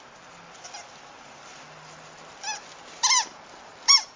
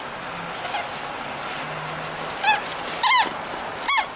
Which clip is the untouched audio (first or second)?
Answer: second